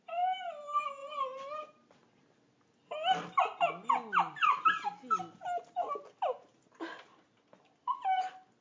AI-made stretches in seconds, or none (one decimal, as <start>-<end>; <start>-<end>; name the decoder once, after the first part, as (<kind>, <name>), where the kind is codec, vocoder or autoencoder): none